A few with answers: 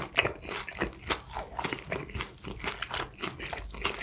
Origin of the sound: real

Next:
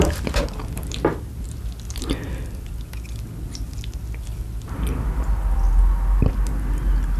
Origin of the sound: real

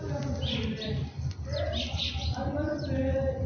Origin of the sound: real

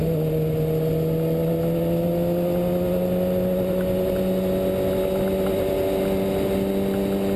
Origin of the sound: real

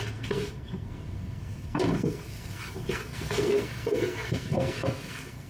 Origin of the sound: fake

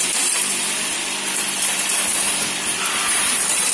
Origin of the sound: fake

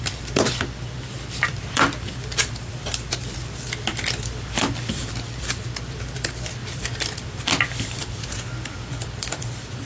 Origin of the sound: fake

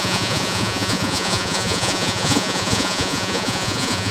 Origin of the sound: fake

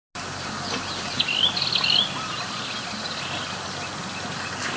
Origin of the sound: real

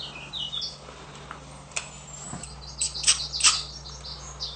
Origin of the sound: real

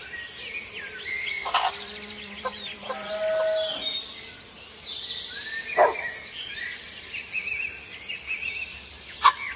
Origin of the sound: real